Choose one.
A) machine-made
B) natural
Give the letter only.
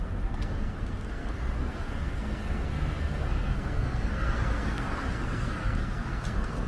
A